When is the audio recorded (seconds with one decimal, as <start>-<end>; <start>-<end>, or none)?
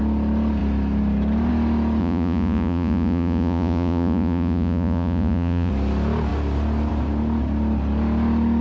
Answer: 0.0-2.0; 5.7-8.6